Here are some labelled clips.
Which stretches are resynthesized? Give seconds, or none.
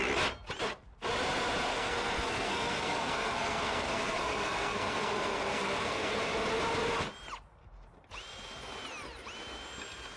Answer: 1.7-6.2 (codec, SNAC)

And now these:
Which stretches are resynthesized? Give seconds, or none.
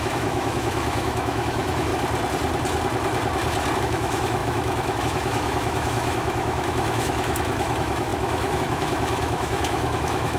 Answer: 0.0-1.9 (autoencoder, DAC-VAE); 3.8-10.4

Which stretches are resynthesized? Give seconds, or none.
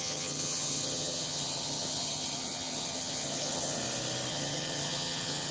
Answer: 0.0-3.8 (vocoder, HiFi-GAN); 4.3-5.5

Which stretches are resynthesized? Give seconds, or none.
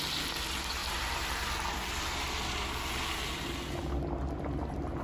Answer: none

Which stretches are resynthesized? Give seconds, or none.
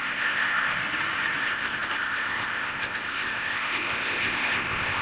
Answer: 0.0-0.8 (codec, ZipCodec); 1.4-5.0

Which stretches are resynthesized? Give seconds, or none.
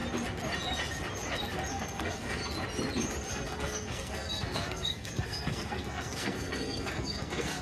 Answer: 1.7-2.4 (codec, SNAC); 3.3-7.6